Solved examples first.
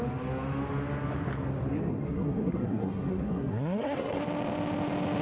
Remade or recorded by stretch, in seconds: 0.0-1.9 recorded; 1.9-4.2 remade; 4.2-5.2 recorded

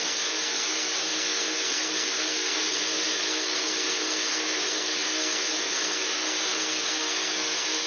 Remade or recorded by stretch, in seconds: 0.0-7.9 remade

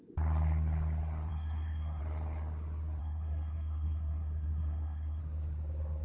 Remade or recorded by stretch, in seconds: 0.0-1.3 recorded; 1.3-2.0 remade; 2.0-3.0 recorded; 3.0-5.2 remade; 5.2-6.0 recorded